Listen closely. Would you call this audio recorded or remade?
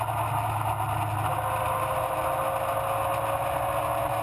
recorded